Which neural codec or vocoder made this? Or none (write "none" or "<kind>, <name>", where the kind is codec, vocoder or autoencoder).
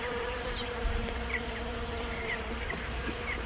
vocoder, BigVGAN v2